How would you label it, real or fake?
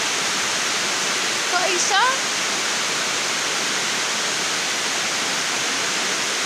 real